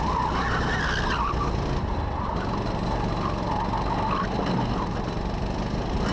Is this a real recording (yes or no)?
yes